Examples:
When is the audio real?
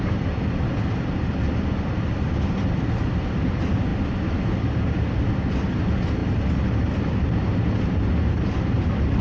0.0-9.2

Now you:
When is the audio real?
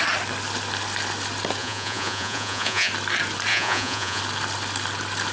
0.0-1.6; 2.9-3.5; 4.2-5.3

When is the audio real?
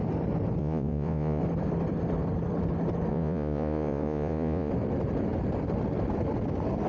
0.0-0.6; 1.4-3.1; 4.7-6.9